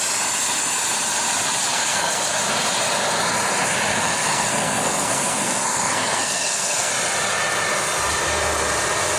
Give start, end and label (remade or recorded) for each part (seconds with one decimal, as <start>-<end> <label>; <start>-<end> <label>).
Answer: 0.0-1.7 recorded; 1.7-2.4 remade; 2.4-3.9 recorded; 3.9-6.9 remade; 6.9-9.2 recorded